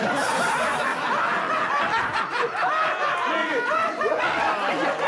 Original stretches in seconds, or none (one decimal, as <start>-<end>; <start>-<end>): 0.0-3.4; 4.2-5.1